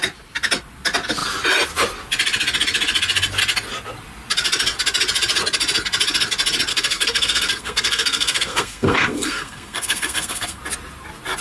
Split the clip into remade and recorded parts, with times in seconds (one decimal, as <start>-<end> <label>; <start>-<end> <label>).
0.0-6.7 recorded; 6.7-10.6 remade; 10.6-11.4 recorded